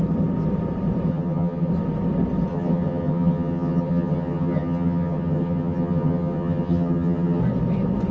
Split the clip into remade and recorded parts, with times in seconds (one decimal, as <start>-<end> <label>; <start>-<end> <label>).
0.0-1.1 recorded; 1.1-1.7 remade; 1.7-2.5 recorded; 2.5-7.4 remade; 7.4-8.1 recorded